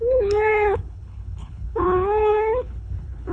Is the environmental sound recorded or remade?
remade